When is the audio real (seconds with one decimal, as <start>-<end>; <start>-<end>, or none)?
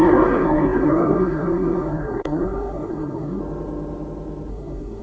3.4-4.5